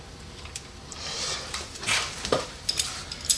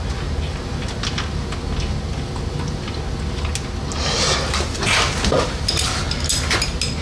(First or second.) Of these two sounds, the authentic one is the second